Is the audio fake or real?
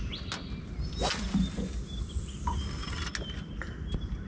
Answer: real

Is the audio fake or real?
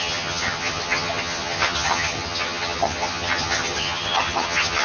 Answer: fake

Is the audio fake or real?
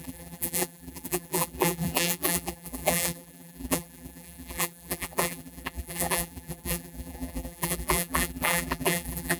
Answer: fake